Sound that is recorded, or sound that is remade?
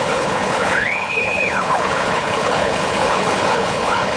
remade